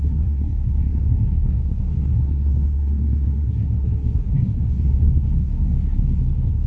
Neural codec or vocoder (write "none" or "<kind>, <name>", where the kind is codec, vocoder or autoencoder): codec, SNAC